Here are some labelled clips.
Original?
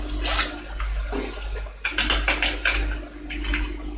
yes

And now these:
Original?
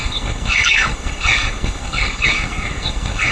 no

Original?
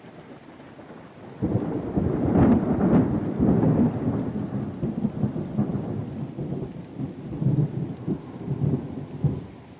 yes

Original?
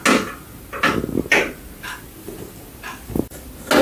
yes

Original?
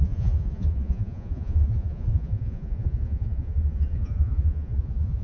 no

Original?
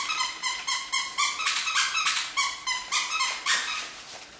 no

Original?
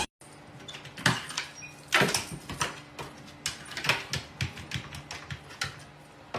yes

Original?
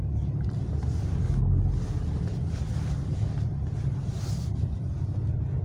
yes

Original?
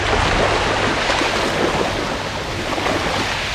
yes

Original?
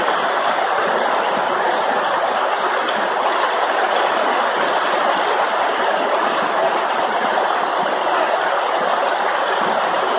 yes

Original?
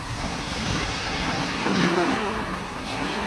no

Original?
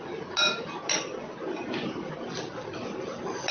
yes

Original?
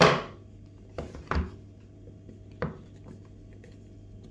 yes